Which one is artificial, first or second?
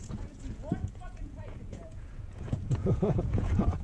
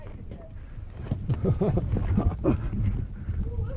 first